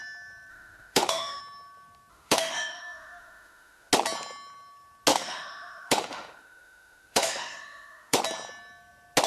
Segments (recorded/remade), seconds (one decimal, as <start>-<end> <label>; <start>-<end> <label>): 0.0-0.5 recorded; 0.5-1.4 remade; 1.4-2.1 recorded; 2.1-3.9 remade; 3.9-5.1 recorded; 5.1-8.2 remade; 8.2-9.3 recorded